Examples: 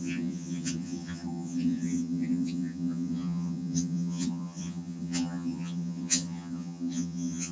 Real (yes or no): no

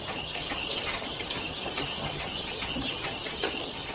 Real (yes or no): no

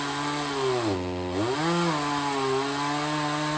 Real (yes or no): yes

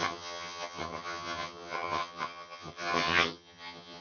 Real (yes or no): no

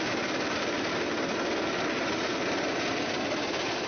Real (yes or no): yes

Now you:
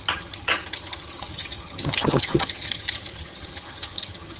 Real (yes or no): no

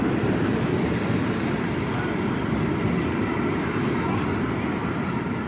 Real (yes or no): yes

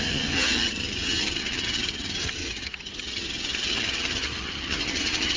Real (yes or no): no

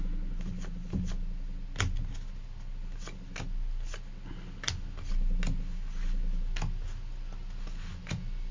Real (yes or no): yes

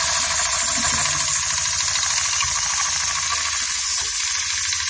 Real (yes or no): yes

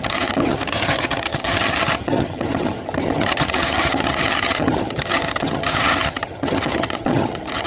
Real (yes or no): no